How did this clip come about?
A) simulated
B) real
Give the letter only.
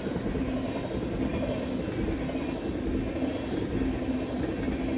B